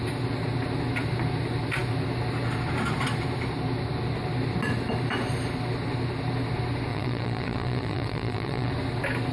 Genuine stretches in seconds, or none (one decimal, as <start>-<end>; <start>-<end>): 0.0-6.9; 8.7-9.3